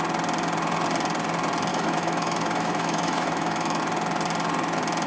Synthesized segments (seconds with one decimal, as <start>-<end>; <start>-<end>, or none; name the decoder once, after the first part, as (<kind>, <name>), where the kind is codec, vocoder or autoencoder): 1.7-3.8 (autoencoder, DAC-VAE)

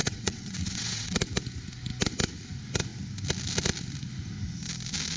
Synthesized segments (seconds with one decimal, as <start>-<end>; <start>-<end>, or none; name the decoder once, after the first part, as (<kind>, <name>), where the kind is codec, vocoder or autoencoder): 0.0-1.2 (vocoder, WaveNeXt)

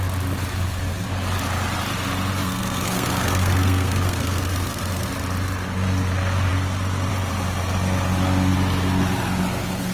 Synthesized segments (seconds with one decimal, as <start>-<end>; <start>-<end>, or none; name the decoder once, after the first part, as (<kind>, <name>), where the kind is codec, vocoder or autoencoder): 2.4-5.1 (codec, SNAC)

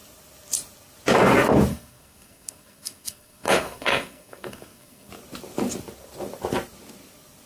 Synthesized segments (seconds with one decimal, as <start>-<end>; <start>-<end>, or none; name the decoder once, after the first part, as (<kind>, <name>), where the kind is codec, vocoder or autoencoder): 1.7-5.1 (codec, SNAC)

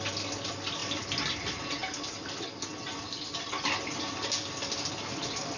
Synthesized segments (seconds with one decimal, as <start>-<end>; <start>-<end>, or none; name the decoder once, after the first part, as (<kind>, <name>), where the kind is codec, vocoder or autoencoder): none

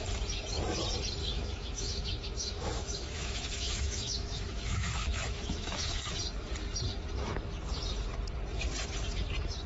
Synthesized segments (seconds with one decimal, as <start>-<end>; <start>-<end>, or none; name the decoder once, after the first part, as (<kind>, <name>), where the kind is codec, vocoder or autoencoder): 1.2-6.2 (autoencoder, DAC-VAE)